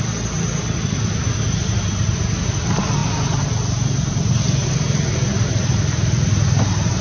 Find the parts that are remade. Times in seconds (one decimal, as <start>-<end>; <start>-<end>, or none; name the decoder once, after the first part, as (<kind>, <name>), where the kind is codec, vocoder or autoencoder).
none